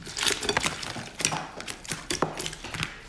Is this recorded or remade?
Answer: recorded